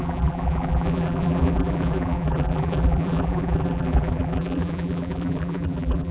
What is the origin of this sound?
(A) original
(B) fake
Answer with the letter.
B